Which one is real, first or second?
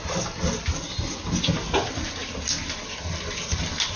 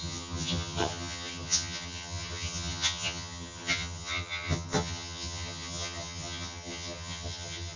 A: first